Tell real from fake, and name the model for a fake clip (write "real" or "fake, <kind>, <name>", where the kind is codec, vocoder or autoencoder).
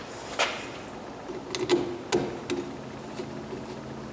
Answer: real